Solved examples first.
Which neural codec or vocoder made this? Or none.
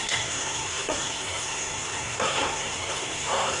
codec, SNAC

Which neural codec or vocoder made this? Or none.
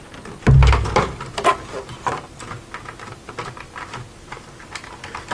none